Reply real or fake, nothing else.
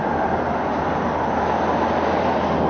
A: real